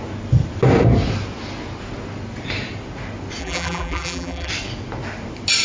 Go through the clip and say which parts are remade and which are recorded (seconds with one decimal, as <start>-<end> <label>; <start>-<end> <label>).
0.0-3.4 recorded; 3.4-4.5 remade; 4.5-5.6 recorded